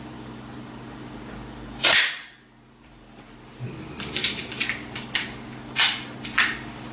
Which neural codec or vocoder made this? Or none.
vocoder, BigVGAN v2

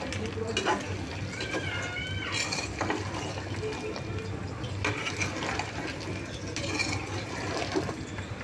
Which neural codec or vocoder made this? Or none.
none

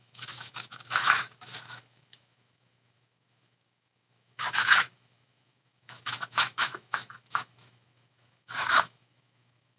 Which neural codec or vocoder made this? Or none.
autoencoder, DAC-VAE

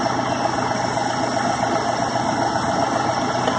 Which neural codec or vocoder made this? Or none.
none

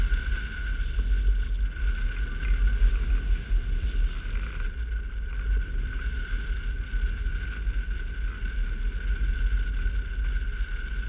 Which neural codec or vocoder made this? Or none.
none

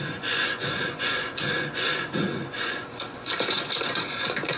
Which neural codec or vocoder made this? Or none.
vocoder, Vocos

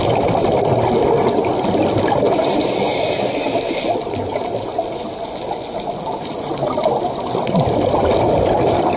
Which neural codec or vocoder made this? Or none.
none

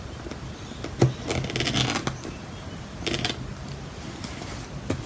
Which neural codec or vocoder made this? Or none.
none